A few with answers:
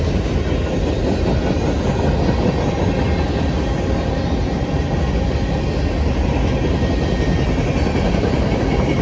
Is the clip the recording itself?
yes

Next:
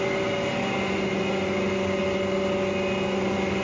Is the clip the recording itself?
yes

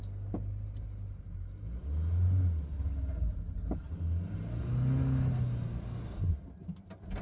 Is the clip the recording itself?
yes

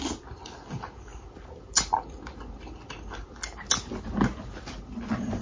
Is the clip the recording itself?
yes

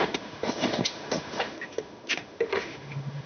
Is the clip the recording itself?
no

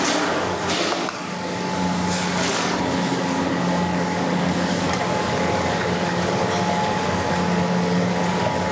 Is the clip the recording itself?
no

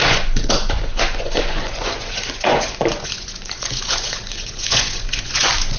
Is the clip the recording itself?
no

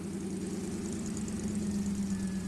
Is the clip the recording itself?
yes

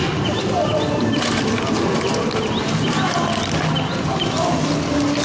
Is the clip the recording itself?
yes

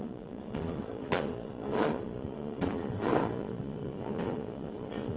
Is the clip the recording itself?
no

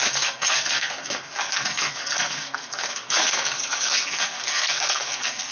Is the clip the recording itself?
no